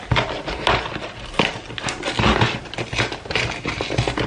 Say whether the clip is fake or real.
real